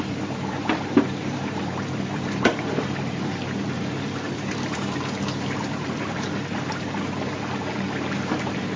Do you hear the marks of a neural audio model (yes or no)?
yes